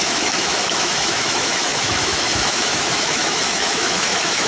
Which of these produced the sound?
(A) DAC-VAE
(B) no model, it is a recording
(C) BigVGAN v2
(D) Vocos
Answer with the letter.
A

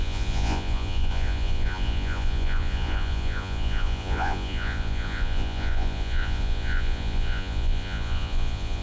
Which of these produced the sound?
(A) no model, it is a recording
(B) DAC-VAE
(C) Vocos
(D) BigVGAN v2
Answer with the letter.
C